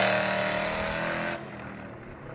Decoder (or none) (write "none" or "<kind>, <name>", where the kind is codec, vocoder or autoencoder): none